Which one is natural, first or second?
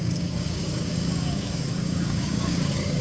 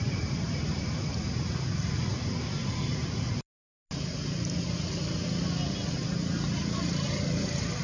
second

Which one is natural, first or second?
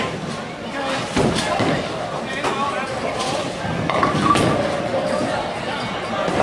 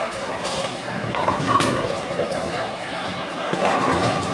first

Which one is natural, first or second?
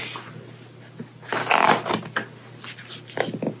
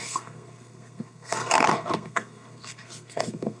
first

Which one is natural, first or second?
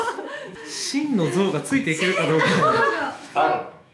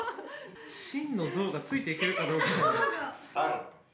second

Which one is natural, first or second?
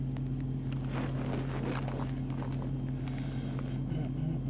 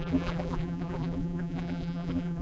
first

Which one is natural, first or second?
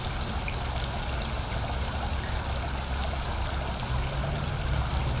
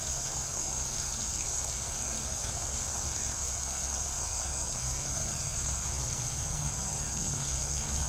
first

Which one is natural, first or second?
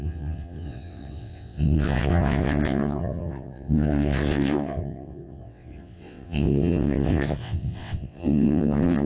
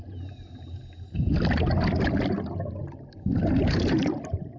second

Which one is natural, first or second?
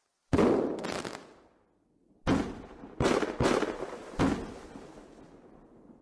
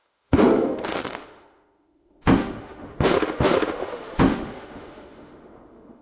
first